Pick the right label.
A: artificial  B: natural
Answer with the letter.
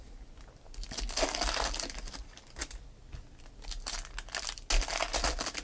B